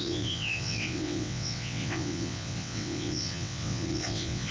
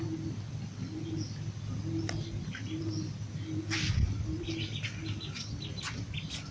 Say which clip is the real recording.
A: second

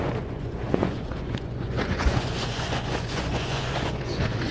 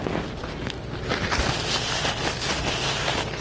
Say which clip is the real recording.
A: second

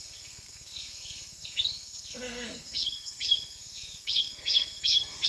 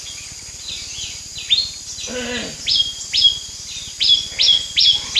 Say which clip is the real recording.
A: second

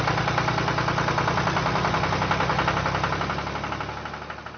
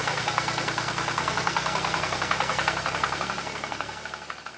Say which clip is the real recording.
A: first